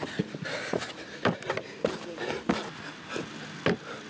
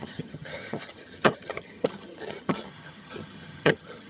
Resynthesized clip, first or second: second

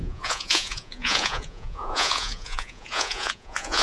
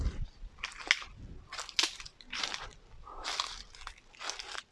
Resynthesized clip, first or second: first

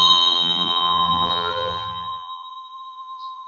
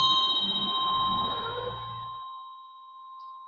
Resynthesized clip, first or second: first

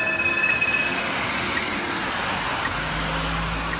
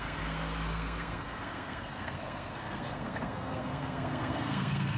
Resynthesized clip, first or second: second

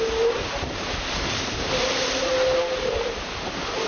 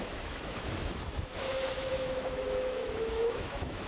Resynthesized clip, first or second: second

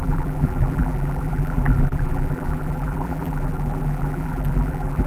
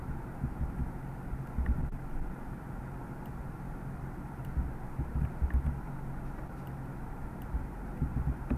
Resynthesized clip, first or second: first